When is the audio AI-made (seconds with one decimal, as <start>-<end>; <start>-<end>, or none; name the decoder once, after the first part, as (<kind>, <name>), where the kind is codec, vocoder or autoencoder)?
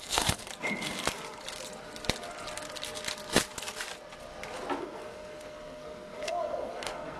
0.0-0.5 (codec, SNAC); 4.8-7.2